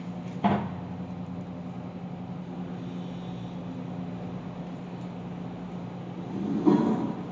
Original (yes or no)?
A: yes